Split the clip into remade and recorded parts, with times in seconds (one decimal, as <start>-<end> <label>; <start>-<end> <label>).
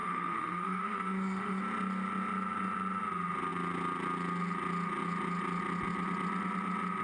0.0-1.6 remade; 1.6-7.0 recorded